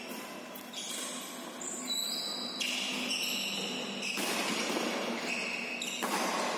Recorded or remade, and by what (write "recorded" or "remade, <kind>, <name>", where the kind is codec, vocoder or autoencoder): recorded